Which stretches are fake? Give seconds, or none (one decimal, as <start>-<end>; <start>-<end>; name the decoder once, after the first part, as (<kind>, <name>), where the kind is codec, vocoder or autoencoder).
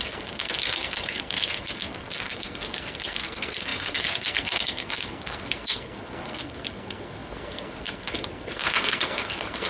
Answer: 0.0-9.7 (codec, SNAC)